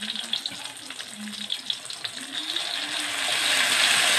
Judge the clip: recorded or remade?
recorded